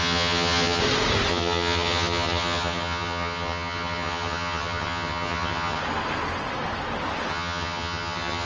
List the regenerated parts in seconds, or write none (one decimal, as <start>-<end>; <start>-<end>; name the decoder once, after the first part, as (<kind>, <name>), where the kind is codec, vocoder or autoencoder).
0.0-0.8 (vocoder, HiFi-GAN); 1.3-5.8; 7.3-8.5